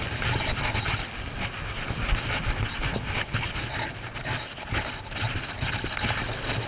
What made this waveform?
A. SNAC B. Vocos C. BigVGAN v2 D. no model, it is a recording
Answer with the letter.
D